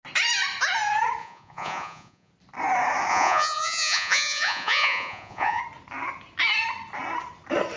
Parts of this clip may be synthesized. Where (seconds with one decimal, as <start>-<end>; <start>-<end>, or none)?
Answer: 1.2-2.3; 3.1-5.6